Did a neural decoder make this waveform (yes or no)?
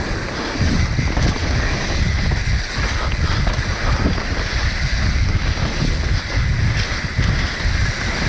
no